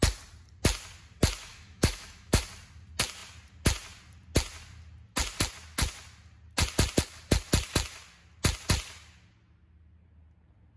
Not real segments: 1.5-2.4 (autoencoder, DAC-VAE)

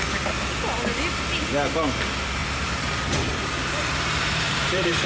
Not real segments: 2.4-5.1 (vocoder, BigVGAN v2)

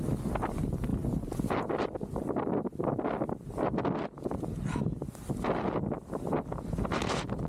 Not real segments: none

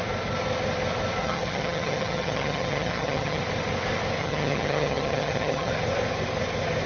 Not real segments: 1.2-3.4 (vocoder, HiFi-GAN); 4.2-5.7

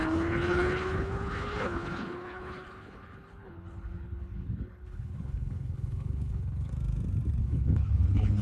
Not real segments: 0.0-6.7 (codec, HILCodec); 7.4-8.4